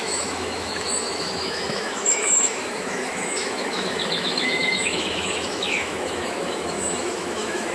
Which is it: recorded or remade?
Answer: remade